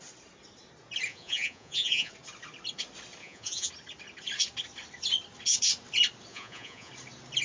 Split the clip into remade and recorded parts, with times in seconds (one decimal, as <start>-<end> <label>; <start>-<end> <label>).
0.0-1.1 recorded; 1.1-2.1 remade; 2.1-3.2 recorded; 3.2-3.7 remade; 3.7-6.3 recorded; 6.3-6.9 remade; 6.9-7.4 recorded